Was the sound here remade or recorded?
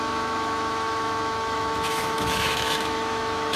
remade